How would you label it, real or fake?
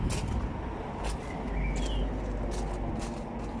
real